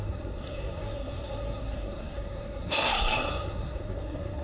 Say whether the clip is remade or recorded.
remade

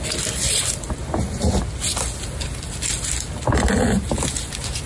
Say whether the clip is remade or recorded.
recorded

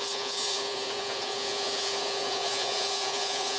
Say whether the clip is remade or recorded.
remade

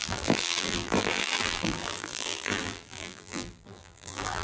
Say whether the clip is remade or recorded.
remade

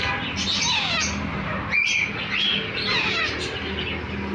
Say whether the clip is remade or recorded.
recorded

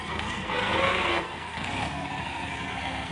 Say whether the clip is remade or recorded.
remade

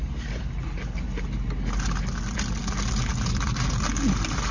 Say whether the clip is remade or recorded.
recorded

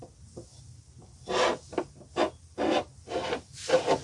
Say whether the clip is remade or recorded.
recorded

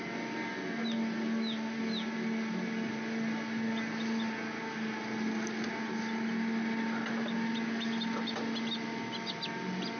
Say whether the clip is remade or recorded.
recorded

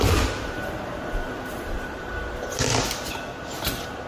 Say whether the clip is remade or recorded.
remade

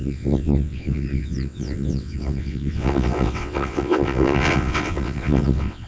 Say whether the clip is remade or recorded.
remade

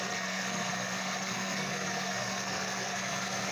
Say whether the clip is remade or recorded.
remade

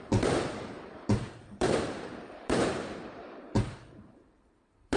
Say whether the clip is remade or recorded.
remade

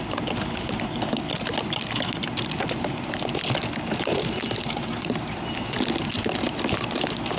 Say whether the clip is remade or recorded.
recorded